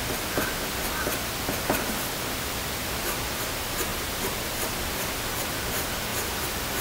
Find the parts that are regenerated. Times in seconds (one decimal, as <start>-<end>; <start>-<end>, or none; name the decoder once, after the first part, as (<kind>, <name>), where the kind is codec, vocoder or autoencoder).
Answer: 3.9-5.4 (vocoder, BigVGAN v2); 6.1-6.8